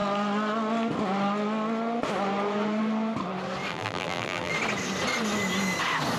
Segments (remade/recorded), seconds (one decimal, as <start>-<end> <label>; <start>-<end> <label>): 0.0-3.7 recorded; 3.7-4.5 remade; 4.5-6.2 recorded